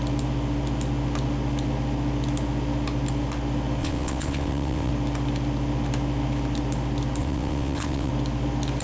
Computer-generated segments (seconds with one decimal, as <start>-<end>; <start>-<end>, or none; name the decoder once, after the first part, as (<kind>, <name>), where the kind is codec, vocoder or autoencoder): 3.8-4.9 (vocoder, WaveNeXt); 7.2-8.1